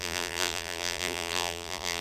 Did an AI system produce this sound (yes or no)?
yes